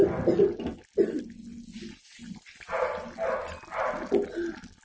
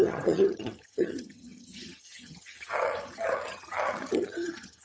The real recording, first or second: first